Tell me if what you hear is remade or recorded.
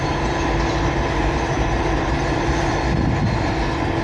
recorded